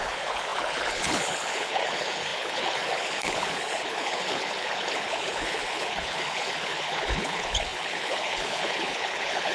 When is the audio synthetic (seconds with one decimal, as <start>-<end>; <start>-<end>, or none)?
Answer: 0.0-9.5